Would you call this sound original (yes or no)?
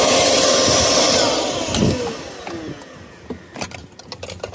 yes